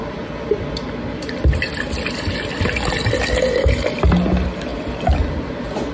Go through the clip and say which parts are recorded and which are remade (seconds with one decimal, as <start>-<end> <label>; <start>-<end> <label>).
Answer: 0.0-5.9 recorded